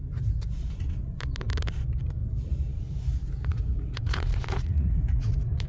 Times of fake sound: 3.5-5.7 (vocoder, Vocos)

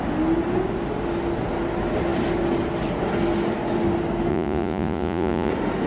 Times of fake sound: 4.3-5.5 (vocoder, Vocos)